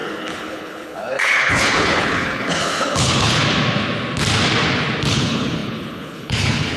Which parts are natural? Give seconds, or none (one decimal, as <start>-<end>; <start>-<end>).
3.4-5.1